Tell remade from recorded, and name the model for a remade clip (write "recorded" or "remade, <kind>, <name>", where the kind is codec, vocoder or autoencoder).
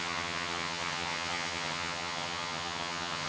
remade, vocoder, HiFi-GAN